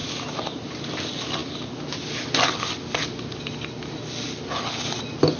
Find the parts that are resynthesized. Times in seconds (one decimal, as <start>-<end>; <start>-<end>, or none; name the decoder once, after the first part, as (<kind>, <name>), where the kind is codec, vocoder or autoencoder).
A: none